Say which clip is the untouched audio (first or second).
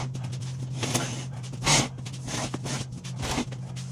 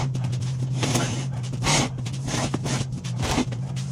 first